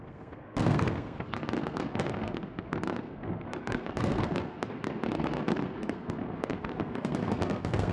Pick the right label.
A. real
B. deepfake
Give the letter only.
B